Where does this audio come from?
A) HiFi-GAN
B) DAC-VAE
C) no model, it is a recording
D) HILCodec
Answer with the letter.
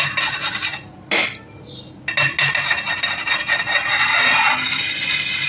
C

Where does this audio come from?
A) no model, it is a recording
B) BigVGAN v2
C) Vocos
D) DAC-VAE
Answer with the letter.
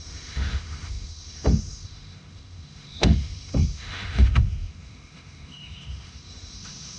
D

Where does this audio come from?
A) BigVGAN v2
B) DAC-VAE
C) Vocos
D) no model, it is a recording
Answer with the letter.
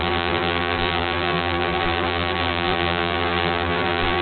A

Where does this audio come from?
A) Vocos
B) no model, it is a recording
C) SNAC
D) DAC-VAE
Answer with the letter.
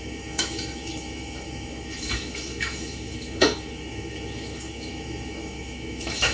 D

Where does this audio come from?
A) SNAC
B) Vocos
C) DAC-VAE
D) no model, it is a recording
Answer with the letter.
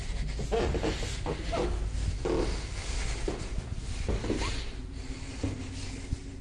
D